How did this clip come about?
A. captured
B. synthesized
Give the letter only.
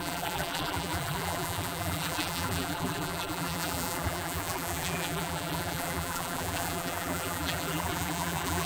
B